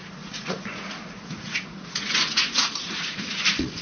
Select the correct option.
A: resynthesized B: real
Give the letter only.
A